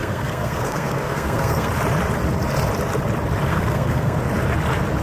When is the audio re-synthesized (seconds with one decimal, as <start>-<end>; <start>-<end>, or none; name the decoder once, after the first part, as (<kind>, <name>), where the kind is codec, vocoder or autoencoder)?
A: 0.0-1.7 (codec, SNAC); 3.5-4.2